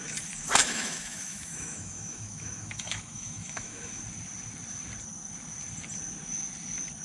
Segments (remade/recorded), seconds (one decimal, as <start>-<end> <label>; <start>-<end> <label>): 0.0-0.6 recorded; 0.6-4.0 remade; 4.0-7.0 recorded